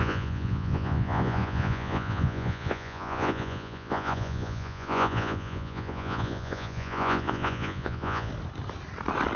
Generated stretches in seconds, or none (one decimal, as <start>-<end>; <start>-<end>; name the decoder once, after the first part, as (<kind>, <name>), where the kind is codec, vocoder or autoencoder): 0.0-8.3 (vocoder, Vocos)